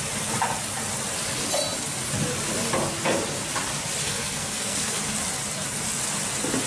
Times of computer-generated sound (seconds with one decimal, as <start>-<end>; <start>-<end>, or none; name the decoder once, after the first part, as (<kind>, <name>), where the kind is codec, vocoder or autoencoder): 4.0-5.0 (codec, SNAC)